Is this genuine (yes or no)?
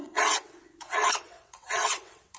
no